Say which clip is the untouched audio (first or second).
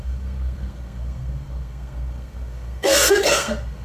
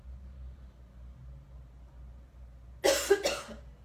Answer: second